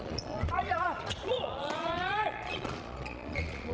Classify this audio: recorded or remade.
remade